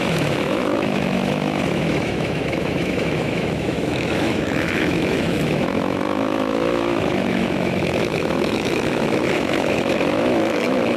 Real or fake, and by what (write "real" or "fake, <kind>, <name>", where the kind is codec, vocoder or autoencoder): fake, autoencoder, DAC-VAE